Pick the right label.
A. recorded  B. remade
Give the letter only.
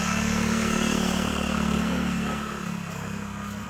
B